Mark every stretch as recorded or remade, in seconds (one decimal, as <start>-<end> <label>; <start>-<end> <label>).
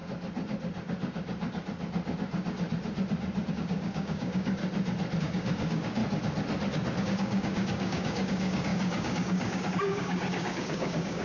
0.0-3.5 recorded; 3.5-4.6 remade; 4.6-5.2 recorded; 5.2-6.0 remade; 6.0-7.0 recorded; 7.0-11.2 remade